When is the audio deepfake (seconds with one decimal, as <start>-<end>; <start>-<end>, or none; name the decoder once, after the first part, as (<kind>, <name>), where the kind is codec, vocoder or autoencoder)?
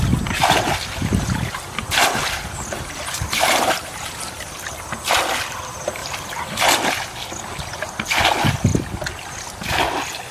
1.0-5.1 (vocoder, BigVGAN v2); 6.0-6.6